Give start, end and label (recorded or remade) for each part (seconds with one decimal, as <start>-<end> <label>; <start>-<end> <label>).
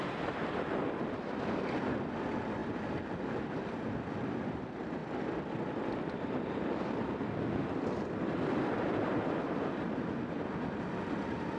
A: 0.0-2.6 remade; 2.6-3.6 recorded; 3.6-11.6 remade